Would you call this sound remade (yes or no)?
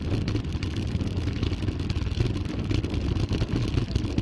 no